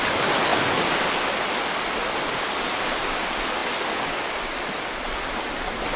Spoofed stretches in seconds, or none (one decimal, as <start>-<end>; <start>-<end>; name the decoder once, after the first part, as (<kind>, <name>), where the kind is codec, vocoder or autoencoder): none